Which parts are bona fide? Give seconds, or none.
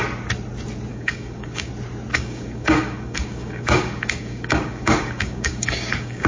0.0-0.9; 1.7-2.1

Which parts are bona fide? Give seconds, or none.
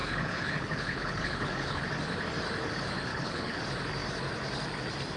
1.8-3.1; 3.6-5.2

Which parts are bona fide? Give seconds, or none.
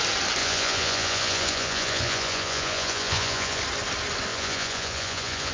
0.0-0.4; 3.6-4.3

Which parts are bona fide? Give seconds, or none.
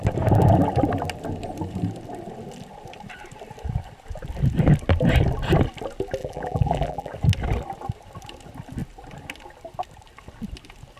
0.0-6.2; 7.1-11.0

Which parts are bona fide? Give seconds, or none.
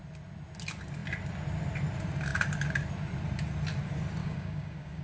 0.0-4.2